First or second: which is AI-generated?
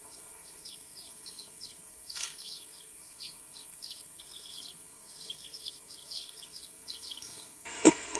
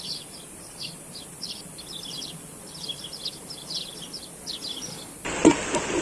first